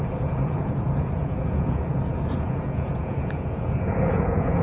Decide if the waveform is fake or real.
fake